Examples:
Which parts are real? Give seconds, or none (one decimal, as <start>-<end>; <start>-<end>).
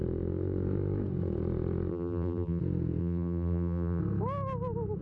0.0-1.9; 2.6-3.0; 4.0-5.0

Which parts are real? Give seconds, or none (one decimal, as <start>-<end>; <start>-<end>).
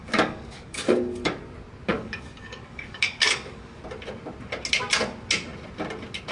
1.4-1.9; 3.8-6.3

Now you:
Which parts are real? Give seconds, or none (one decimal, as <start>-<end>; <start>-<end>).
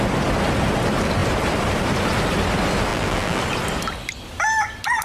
0.0-2.9; 3.4-5.0